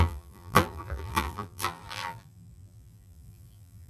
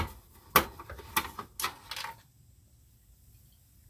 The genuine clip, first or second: second